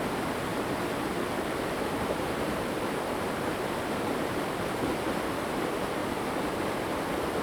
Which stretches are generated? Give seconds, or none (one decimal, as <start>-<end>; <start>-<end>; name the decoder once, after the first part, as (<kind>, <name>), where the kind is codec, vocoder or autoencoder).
0.5-4.9 (vocoder, BigVGAN v2); 6.0-6.6